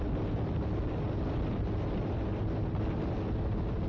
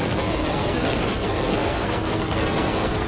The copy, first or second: second